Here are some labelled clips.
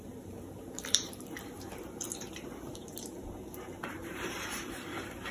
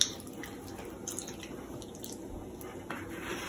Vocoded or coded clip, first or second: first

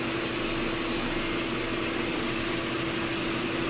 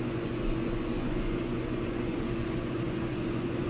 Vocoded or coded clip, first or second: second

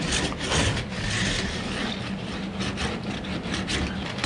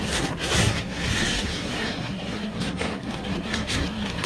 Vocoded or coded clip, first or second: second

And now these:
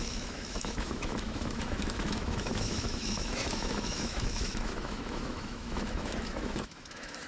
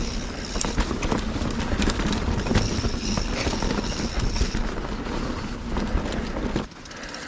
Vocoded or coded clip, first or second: first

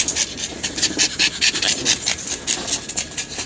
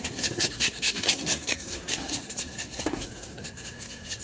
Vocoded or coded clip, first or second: second